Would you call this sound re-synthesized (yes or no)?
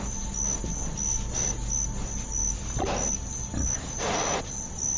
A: no